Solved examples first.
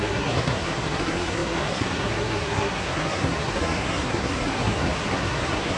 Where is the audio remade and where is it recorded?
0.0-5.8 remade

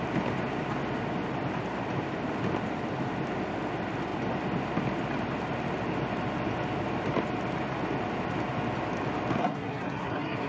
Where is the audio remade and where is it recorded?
0.0-9.4 recorded; 9.4-10.5 remade

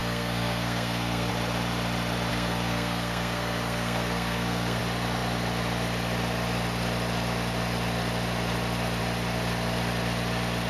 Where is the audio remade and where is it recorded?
0.0-1.3 remade; 1.3-2.3 recorded; 2.3-4.8 remade; 4.8-10.7 recorded

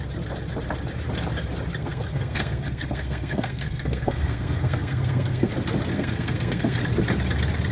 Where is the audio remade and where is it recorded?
0.0-1.8 recorded; 1.8-5.5 remade; 5.5-5.9 recorded; 5.9-6.8 remade; 6.8-7.7 recorded

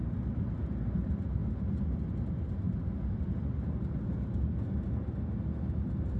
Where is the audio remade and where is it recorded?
0.0-6.2 recorded

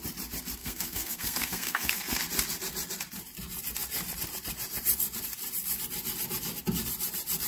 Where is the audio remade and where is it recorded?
0.0-0.6 recorded; 0.6-2.2 remade; 2.2-7.5 recorded

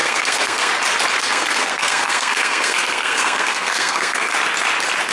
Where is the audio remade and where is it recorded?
0.0-0.7 remade; 0.7-1.2 recorded; 1.2-4.3 remade; 4.3-5.1 recorded

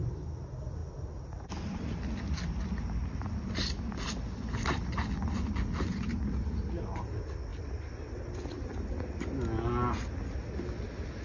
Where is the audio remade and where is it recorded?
0.0-11.2 recorded